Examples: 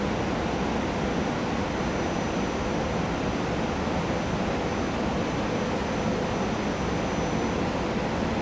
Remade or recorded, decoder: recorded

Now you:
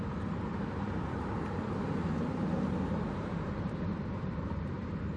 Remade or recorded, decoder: remade, vocoder, BigVGAN v2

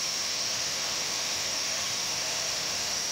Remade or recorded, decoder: remade, autoencoder, DAC-VAE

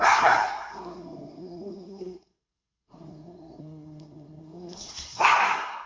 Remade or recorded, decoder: remade, codec, SNAC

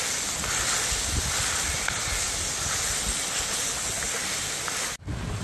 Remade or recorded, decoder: recorded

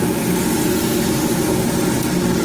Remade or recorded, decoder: recorded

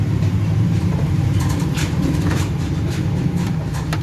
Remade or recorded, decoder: remade, vocoder, BigVGAN v2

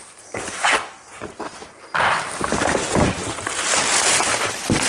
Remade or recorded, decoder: recorded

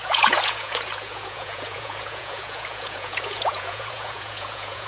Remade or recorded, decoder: remade, vocoder, Vocos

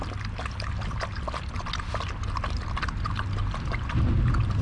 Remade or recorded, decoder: recorded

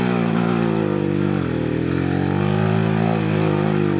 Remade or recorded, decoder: recorded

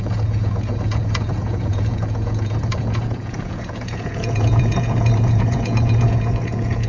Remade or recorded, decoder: remade, vocoder, Vocos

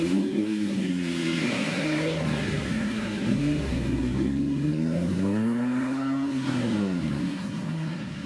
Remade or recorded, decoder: remade, codec, SNAC